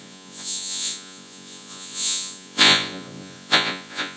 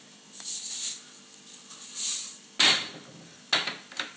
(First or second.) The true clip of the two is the second